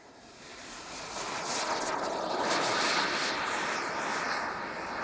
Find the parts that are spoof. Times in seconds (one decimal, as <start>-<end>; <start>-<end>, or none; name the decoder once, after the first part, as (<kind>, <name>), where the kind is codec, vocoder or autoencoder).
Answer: 0.5-1.6 (vocoder, BigVGAN v2); 3.2-3.9